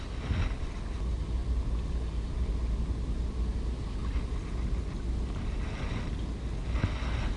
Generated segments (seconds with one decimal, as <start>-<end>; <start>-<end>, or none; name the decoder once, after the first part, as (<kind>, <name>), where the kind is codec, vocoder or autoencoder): none